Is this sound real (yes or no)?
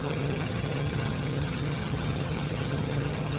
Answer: no